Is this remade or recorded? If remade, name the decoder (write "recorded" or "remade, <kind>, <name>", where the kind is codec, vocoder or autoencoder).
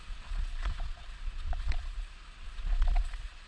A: remade, vocoder, Vocos